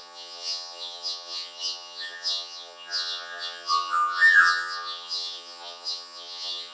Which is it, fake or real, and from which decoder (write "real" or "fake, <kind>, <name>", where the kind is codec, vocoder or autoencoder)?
fake, vocoder, HiFi-GAN